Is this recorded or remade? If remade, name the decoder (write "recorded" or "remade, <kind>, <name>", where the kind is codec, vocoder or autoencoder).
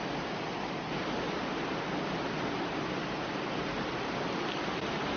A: recorded